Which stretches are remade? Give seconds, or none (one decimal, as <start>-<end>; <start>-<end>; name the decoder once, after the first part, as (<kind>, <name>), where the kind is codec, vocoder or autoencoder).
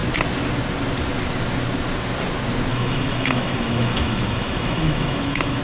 2.7-5.6 (autoencoder, DAC-VAE)